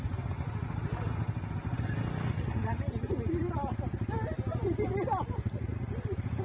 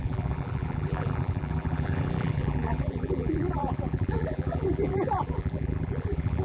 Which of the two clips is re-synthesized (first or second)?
second